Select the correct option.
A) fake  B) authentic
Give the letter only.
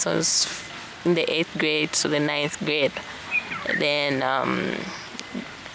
B